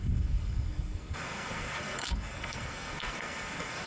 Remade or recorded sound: remade